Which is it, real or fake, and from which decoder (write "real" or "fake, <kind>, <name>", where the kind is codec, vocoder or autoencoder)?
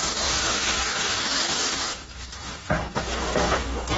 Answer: fake, codec, DAC